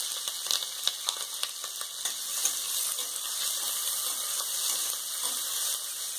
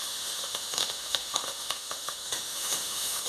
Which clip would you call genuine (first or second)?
first